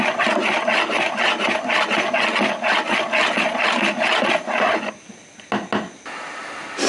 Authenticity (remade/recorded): recorded